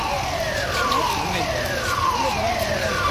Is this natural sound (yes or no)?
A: yes